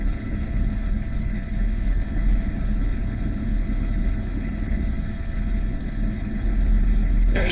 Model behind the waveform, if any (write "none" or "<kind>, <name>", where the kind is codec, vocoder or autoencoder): codec, HILCodec